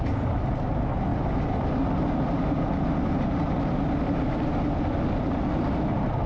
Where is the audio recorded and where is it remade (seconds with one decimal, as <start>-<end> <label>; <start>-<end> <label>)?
0.0-6.3 recorded